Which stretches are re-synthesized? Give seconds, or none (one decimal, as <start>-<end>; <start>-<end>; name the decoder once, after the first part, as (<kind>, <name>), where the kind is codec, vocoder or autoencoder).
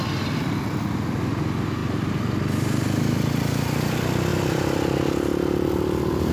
none